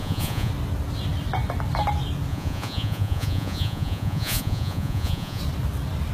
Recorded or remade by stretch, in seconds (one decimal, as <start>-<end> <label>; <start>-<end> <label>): 0.0-0.5 remade; 0.5-2.3 recorded; 2.3-5.4 remade; 5.4-6.1 recorded